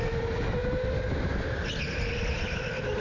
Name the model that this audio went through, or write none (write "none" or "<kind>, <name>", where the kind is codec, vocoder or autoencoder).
none